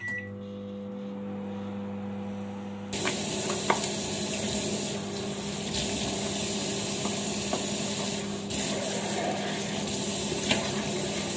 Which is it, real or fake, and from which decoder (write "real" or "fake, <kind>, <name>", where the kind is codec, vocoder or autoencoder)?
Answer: real